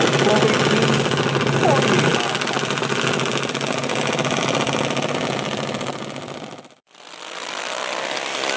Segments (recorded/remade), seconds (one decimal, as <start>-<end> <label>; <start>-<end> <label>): 0.0-8.6 recorded